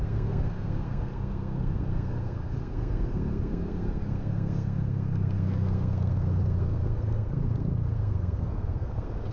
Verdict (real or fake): fake